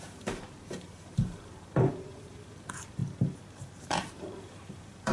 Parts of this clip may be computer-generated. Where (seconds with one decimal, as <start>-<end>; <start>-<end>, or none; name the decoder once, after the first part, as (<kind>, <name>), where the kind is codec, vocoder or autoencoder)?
0.0-3.0 (vocoder, BigVGAN v2); 3.6-5.1